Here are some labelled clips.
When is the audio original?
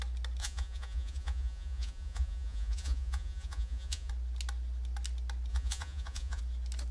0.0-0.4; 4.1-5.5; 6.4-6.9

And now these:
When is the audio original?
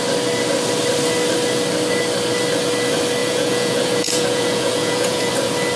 0.0-3.2; 5.3-5.8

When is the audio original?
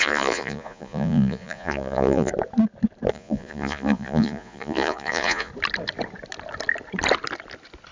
2.3-3.1; 5.5-7.9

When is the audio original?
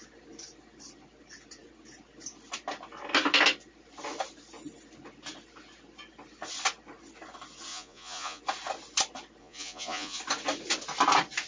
0.0-7.7; 8.4-9.4; 10.2-11.5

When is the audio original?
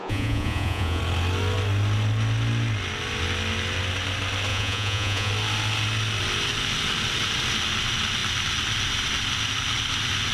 1.0-4.5; 5.3-10.3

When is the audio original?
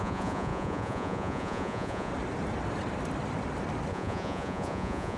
2.1-3.9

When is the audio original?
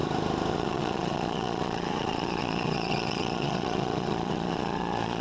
0.0-0.5